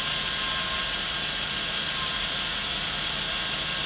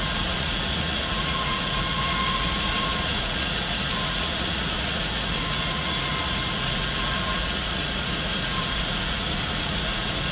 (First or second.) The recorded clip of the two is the first